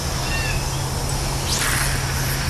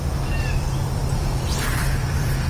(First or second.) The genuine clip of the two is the first